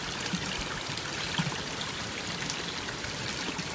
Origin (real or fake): fake